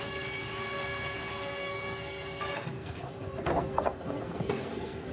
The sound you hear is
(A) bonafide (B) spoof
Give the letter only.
B